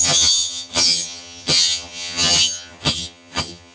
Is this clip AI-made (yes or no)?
yes